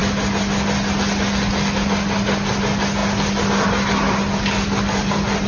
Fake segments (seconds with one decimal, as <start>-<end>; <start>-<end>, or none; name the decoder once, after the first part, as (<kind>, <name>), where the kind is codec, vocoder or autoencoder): none